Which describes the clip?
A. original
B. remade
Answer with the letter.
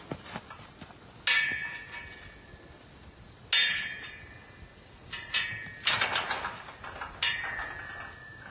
A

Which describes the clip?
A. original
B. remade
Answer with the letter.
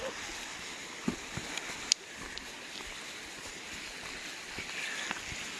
A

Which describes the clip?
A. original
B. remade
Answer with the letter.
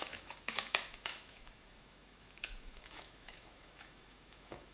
B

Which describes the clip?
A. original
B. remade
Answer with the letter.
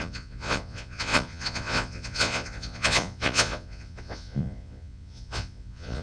B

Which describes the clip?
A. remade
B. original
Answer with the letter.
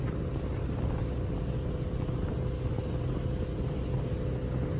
B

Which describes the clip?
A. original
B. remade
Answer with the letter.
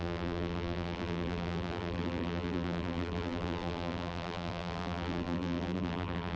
B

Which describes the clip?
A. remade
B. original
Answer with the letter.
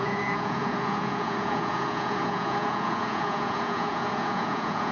A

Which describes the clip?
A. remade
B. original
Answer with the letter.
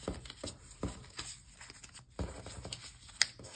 B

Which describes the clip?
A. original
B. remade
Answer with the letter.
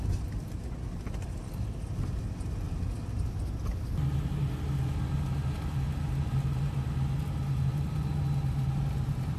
A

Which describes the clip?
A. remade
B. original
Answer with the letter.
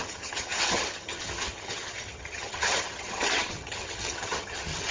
A